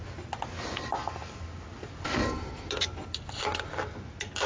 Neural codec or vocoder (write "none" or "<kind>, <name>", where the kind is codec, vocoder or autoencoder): none